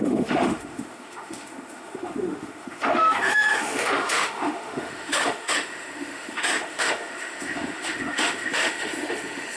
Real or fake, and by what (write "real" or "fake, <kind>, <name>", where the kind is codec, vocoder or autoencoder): fake, autoencoder, DAC-VAE